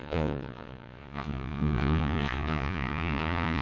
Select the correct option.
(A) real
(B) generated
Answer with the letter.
B